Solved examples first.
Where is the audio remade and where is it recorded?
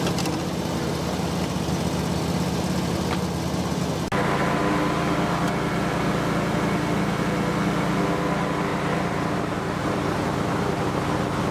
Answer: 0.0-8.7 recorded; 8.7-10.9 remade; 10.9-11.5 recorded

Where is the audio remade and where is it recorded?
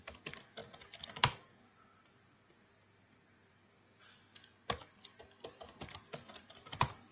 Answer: 0.0-0.6 remade; 0.6-2.7 recorded; 2.7-5.1 remade; 5.1-6.0 recorded; 6.0-7.1 remade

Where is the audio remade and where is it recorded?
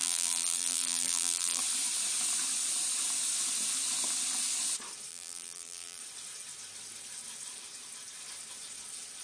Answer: 0.0-1.6 remade; 1.6-5.1 recorded; 5.1-6.0 remade; 6.0-9.2 recorded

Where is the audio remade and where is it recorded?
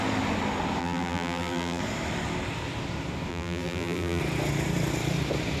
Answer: 0.0-0.8 recorded; 0.8-1.8 remade; 1.8-3.3 recorded; 3.3-4.2 remade; 4.2-5.6 recorded